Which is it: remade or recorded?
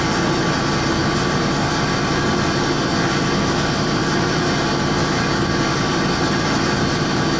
recorded